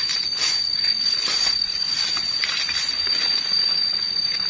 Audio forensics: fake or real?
real